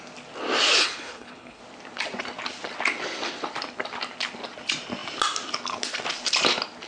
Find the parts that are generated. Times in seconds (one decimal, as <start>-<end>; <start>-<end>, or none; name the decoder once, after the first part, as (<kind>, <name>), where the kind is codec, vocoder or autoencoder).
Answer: 0.8-1.6 (codec, HILCodec)